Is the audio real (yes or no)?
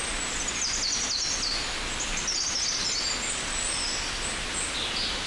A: yes